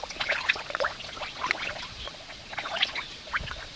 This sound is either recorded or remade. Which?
remade